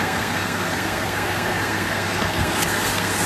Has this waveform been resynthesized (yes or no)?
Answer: yes